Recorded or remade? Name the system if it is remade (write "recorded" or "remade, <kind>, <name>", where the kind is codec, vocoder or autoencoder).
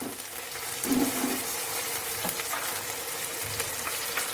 recorded